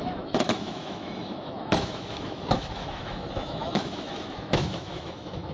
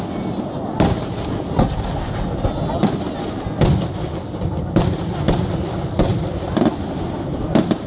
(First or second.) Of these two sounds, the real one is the second